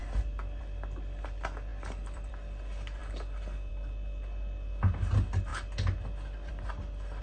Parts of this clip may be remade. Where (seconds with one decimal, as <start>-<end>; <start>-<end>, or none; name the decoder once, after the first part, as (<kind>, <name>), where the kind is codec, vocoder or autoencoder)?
1.7-2.3 (vocoder, BigVGAN v2)